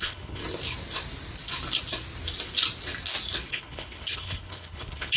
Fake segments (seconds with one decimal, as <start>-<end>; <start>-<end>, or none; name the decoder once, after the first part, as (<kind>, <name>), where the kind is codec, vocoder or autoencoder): 0.0-0.4 (codec, HILCodec); 3.5-5.2